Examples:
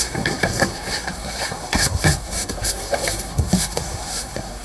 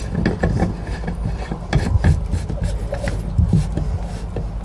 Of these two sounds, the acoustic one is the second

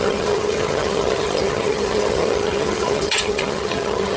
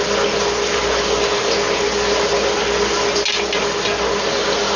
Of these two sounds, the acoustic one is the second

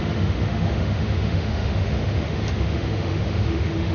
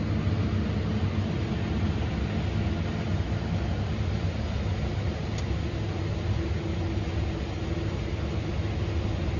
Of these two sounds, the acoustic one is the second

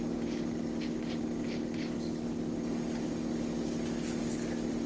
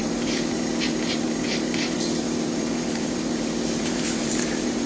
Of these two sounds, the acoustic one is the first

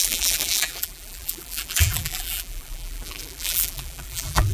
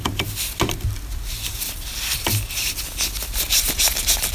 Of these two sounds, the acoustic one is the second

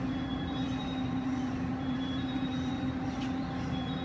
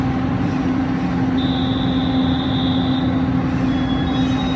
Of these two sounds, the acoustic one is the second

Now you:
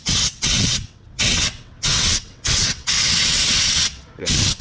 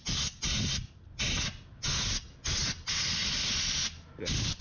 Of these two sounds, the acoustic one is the second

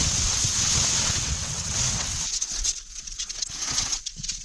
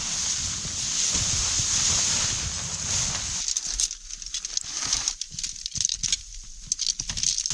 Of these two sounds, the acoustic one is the second